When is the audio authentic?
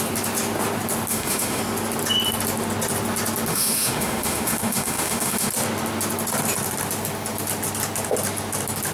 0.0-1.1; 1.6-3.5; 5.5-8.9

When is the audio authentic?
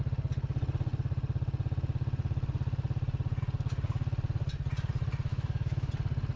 0.0-5.3; 5.9-6.4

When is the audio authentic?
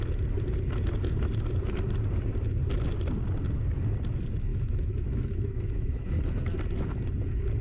0.0-4.5; 6.2-7.6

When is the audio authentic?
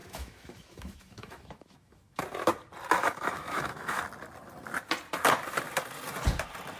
2.2-3.0; 4.0-6.8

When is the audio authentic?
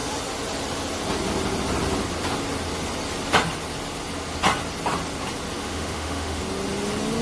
0.0-5.6; 6.4-7.2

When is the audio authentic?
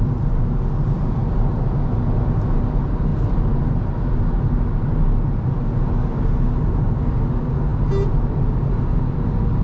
0.0-9.6